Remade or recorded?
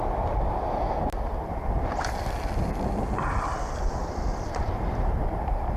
recorded